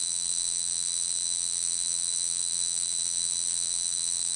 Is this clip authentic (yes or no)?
no